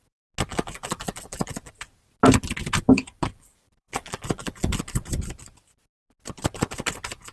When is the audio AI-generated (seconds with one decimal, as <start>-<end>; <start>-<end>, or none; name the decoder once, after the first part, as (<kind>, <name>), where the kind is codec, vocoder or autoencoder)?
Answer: 0.5-1.7 (vocoder, BigVGAN v2); 3.3-4.8